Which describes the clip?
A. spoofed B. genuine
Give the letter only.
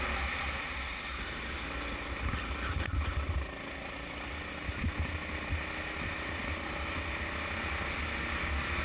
B